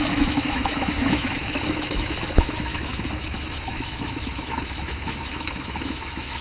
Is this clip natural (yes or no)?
no